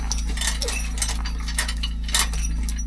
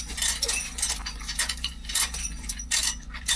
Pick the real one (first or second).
first